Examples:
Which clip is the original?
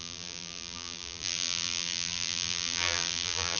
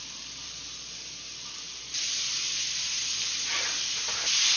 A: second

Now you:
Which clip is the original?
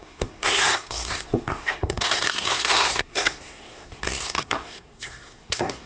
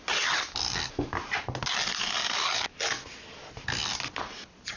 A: second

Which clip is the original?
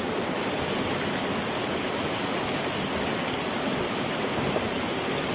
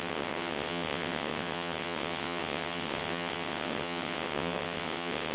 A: first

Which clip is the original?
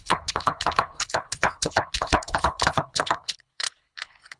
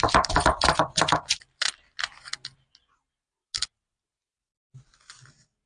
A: second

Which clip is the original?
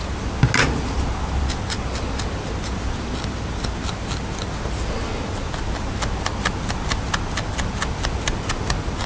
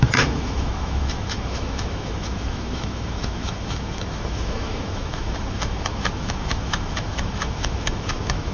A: first